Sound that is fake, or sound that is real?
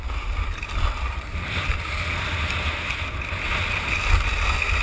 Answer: real